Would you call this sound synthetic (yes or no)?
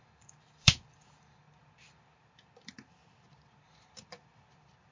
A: yes